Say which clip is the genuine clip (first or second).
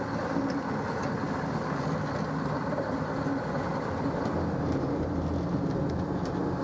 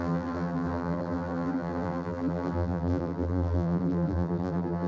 first